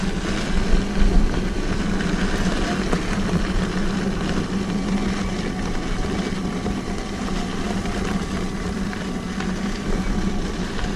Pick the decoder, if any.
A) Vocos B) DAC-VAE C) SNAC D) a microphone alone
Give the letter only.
D